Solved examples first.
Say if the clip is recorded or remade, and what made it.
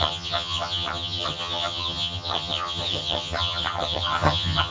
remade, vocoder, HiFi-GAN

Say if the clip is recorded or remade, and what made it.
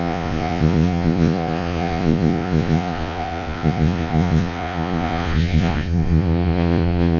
remade, vocoder, Vocos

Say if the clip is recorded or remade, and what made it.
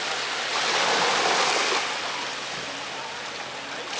recorded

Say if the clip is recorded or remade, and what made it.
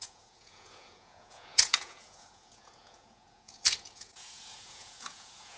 remade, vocoder, Vocos